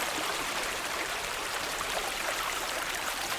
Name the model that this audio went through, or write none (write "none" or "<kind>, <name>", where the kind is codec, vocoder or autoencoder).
vocoder, BigVGAN v2